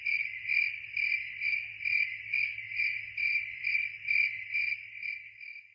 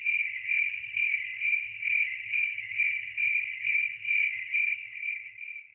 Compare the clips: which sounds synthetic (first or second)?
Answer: second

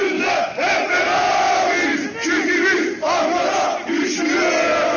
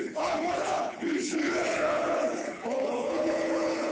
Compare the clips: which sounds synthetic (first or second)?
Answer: second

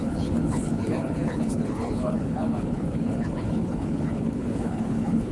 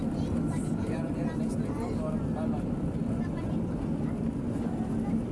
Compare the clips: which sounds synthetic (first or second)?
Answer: first